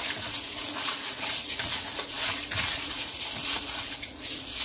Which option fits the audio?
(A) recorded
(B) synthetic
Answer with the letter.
B